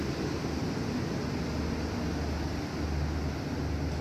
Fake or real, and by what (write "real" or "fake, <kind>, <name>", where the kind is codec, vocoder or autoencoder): real